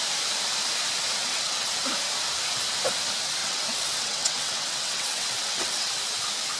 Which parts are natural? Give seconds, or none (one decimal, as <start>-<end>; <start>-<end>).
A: 0.0-1.2; 1.7-3.4; 5.9-6.6